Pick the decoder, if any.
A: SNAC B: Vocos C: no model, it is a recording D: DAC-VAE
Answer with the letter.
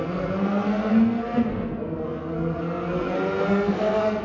A